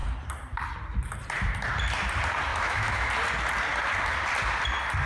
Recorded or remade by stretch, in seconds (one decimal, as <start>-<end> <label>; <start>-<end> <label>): 0.0-2.5 recorded; 2.5-3.1 remade; 3.1-5.0 recorded